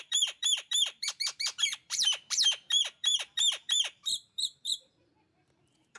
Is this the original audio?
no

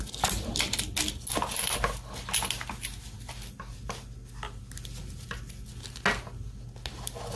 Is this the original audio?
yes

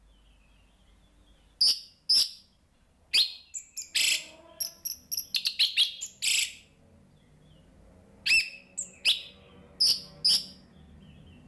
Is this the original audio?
yes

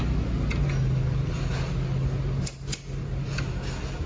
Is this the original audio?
yes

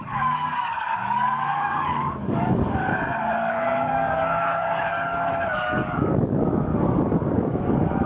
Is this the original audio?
no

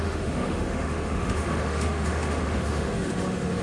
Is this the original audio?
no